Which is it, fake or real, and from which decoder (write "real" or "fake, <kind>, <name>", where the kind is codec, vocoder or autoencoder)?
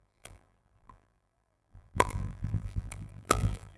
fake, vocoder, BigVGAN v2